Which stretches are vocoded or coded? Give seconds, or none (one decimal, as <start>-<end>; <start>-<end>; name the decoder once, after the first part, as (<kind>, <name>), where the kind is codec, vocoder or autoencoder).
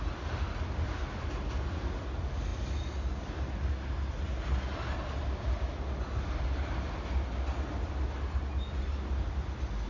none